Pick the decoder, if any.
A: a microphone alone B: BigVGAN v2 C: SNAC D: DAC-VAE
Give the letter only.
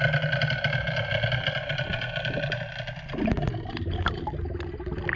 A